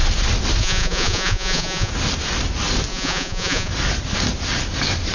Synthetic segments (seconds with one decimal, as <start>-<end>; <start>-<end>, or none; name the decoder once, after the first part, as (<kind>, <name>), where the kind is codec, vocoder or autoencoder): 0.6-1.9 (vocoder, Vocos); 2.9-3.7